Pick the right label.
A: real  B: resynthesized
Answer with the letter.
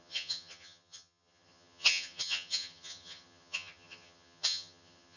B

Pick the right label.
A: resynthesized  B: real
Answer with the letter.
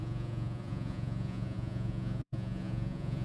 A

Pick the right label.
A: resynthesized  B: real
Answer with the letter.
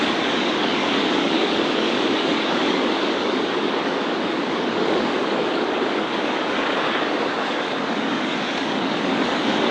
A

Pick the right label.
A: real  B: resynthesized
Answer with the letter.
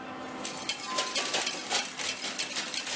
A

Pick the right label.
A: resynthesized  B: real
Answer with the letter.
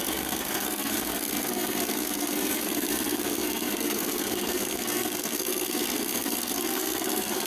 A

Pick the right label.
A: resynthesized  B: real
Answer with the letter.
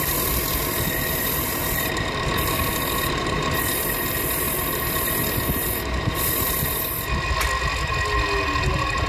B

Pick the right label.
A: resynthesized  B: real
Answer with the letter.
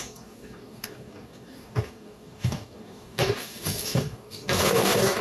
A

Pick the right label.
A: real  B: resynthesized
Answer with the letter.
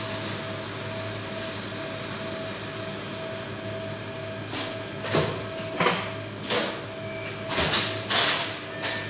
A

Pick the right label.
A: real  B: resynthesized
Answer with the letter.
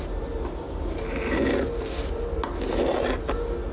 A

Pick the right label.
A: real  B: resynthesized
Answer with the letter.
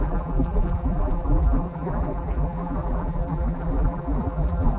B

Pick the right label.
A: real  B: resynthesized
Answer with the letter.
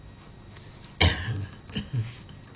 A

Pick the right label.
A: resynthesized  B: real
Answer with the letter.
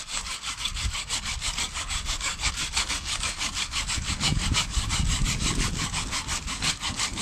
A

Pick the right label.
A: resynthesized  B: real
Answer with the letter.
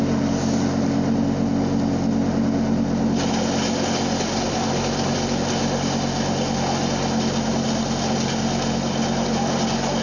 B